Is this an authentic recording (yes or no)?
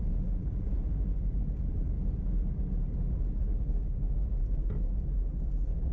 yes